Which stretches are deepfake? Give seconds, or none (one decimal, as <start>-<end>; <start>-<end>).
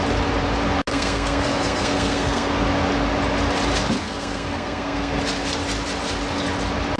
0.9-2.6; 4.0-5.2